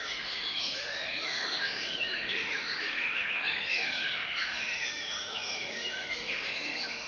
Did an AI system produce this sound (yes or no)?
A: yes